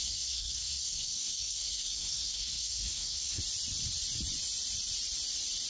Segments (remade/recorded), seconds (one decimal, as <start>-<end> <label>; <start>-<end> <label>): 0.0-3.4 remade; 3.4-5.7 recorded